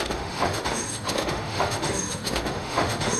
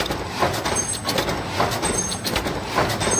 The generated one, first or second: first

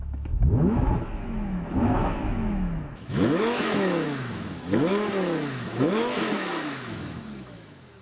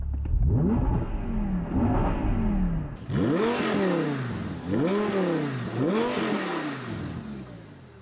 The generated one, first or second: first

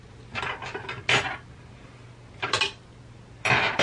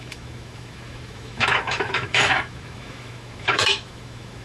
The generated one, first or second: second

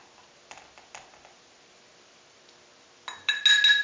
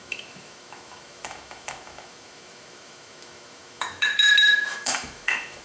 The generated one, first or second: second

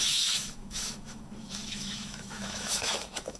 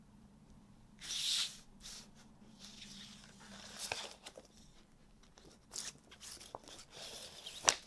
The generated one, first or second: first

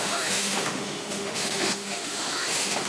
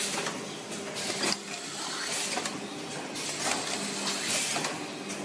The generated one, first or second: first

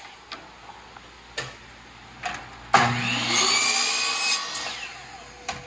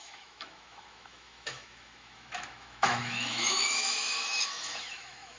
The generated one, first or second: second